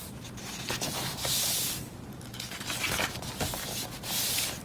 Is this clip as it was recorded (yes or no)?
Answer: yes